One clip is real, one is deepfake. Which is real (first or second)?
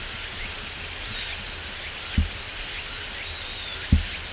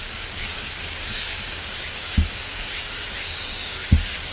first